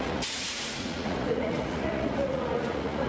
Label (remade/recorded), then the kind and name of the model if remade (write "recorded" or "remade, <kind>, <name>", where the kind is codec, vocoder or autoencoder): remade, vocoder, Vocos